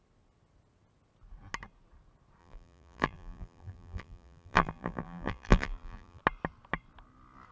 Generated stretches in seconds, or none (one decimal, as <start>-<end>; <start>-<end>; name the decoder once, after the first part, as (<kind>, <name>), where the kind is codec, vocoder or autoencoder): 2.4-6.2 (vocoder, BigVGAN v2)